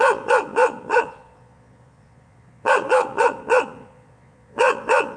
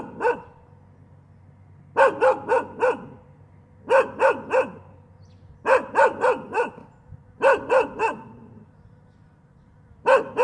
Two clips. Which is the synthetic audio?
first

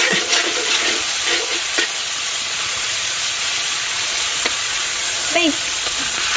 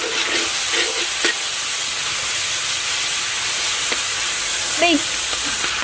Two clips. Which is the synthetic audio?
first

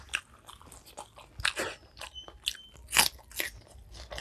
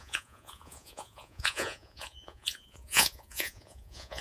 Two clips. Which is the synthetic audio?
second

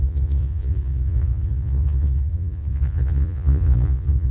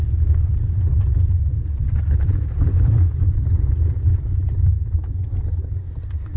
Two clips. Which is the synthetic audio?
first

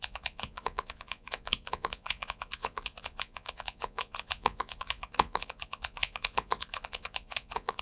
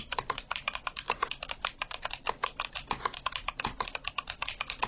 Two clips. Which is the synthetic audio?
first